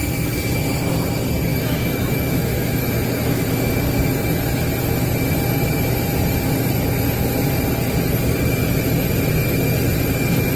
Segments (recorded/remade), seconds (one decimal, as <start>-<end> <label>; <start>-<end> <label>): 0.0-1.5 recorded; 1.5-3.7 remade; 3.7-10.6 recorded